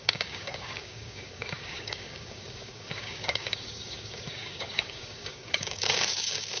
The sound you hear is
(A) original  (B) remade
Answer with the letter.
B